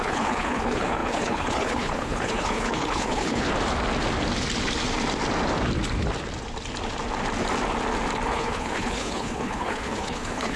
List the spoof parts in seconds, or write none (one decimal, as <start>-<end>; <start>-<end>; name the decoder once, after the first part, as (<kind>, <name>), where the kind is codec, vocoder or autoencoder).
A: 0.0-3.5 (codec, HILCodec); 8.3-10.6